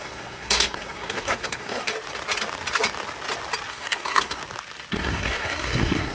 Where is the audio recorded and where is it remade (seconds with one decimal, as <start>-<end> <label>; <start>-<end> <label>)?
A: 0.0-1.9 remade; 1.9-3.7 recorded; 3.7-4.4 remade; 4.4-4.9 recorded; 4.9-6.1 remade